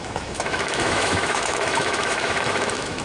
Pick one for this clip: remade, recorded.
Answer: remade